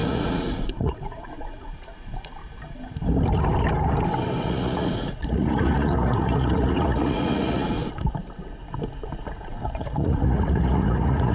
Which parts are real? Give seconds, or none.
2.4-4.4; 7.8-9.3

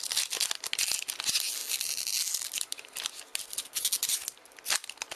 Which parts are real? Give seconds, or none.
0.0-5.2

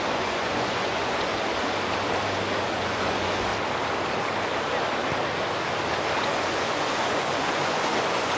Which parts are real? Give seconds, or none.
1.3-2.6; 3.5-6.2

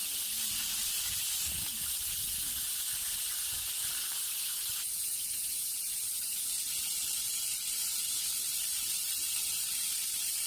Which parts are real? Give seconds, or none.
0.0-10.5